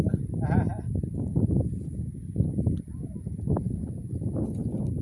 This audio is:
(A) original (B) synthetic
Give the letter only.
A